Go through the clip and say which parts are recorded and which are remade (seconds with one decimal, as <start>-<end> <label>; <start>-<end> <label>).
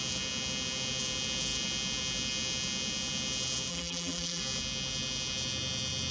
0.0-3.7 recorded; 3.7-4.4 remade; 4.4-6.1 recorded